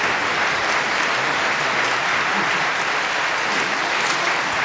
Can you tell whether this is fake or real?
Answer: real